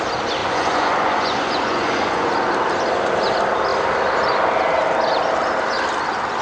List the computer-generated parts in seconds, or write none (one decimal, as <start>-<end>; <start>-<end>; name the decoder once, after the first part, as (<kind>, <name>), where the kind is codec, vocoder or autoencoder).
0.4-2.3 (vocoder, Vocos)